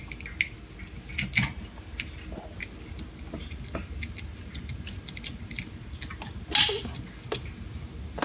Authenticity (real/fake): real